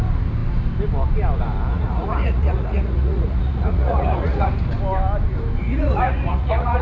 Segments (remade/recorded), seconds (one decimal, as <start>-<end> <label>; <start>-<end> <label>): 0.0-1.7 recorded; 1.7-4.5 remade; 4.5-5.6 recorded; 5.6-6.8 remade